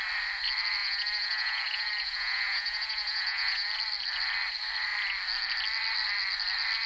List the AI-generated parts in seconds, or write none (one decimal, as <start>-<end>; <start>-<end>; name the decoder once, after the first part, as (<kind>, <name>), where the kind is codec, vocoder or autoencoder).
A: 0.8-3.7 (vocoder, Vocos)

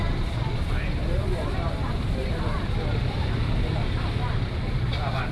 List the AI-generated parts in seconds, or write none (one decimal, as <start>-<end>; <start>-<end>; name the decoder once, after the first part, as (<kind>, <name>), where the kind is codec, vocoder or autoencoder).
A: 0.0-5.3 (vocoder, BigVGAN v2)

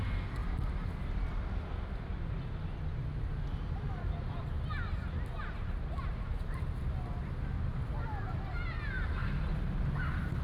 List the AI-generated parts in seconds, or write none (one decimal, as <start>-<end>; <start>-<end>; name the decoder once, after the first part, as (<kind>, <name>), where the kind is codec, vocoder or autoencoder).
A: none

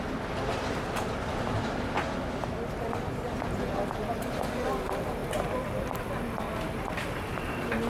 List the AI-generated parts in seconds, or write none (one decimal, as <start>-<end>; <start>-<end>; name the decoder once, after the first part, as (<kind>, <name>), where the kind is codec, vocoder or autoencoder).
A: 5.2-6.0 (vocoder, BigVGAN v2)

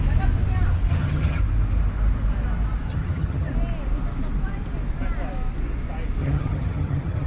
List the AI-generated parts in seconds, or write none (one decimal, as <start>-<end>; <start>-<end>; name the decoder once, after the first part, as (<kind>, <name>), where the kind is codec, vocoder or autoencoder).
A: 0.9-1.4 (vocoder, HiFi-GAN); 2.9-3.5; 6.2-7.3